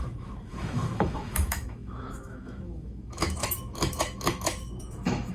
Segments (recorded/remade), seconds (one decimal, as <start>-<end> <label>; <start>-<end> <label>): 0.0-5.3 remade